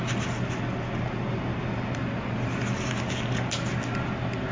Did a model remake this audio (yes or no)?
no